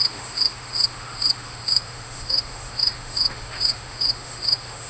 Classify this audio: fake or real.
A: fake